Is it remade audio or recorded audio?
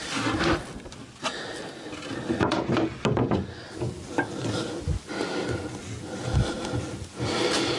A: recorded